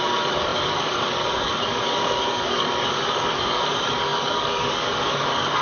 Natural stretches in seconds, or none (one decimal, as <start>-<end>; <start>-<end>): none